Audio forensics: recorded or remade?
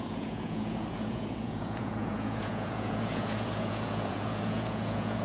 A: remade